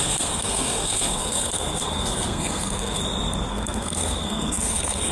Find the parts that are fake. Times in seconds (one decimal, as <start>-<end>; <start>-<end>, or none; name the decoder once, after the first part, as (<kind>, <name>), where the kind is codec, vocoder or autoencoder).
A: 0.0-3.0 (codec, SNAC); 3.5-5.1